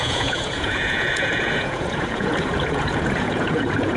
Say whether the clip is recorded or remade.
remade